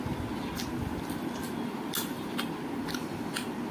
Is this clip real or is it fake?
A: real